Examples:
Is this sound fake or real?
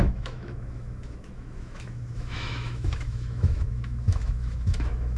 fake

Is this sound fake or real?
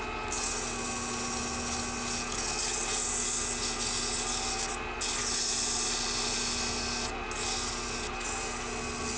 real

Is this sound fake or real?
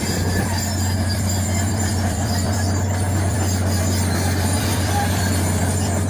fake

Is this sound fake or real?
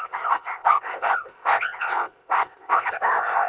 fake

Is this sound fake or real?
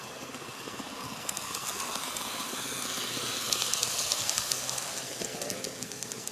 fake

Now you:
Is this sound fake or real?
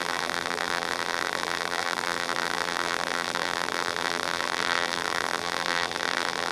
fake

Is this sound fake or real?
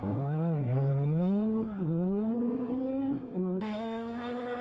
fake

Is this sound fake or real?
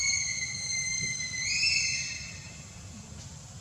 fake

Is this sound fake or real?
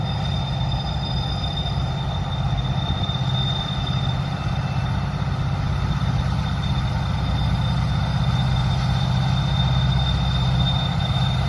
real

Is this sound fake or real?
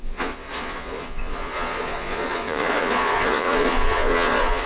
fake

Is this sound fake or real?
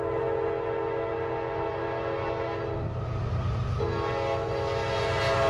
real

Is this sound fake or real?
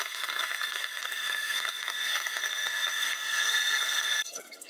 fake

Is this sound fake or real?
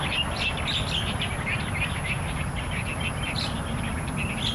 real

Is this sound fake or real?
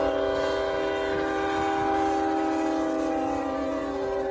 real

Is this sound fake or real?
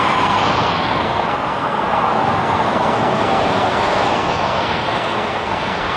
fake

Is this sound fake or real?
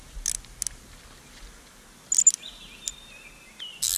real